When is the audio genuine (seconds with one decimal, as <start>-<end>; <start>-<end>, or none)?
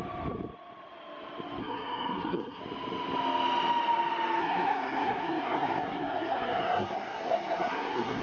0.0-1.6; 2.6-4.4